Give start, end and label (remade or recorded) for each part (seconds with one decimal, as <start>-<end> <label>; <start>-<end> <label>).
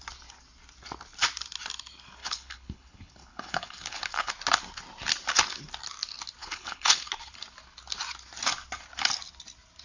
0.0-2.2 recorded; 2.2-4.3 remade; 4.3-6.4 recorded; 6.4-7.1 remade; 7.1-9.8 recorded